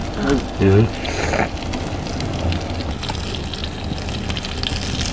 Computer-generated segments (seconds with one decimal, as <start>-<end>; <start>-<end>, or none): none